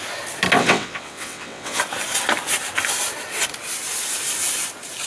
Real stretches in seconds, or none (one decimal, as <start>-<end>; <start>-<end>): 0.0-0.6; 1.8-5.1